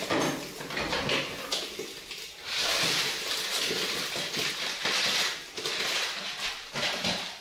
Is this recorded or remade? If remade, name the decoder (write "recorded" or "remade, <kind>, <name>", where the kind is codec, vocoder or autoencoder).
recorded